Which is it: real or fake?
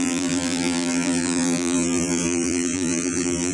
fake